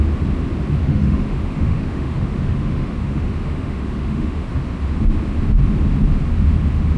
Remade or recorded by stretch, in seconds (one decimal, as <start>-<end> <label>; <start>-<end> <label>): 0.0-0.8 recorded; 0.8-4.5 remade; 4.5-7.0 recorded